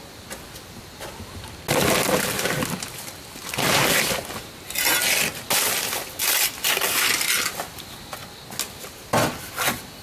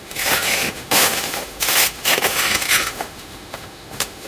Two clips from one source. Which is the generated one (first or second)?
second